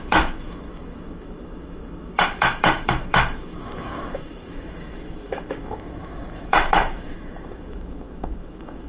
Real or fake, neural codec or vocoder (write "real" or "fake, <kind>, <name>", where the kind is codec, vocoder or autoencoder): fake, autoencoder, DAC-VAE